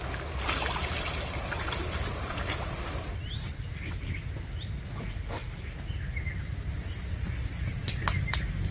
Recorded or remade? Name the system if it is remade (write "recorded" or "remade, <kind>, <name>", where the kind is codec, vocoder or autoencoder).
recorded